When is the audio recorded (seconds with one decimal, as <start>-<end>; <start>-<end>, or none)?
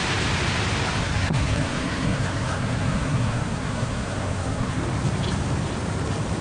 0.0-1.0; 4.8-6.4